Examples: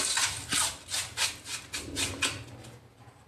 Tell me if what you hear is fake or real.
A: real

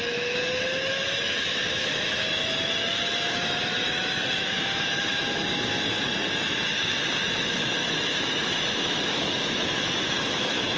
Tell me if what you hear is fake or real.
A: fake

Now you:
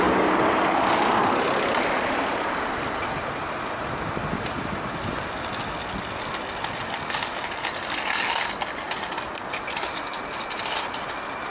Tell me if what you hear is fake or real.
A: real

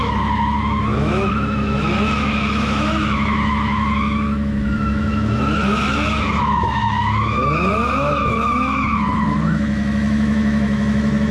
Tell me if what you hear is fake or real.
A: fake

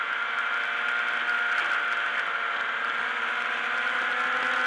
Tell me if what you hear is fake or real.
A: real